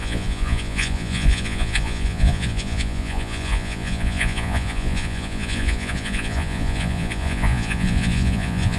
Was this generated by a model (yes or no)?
yes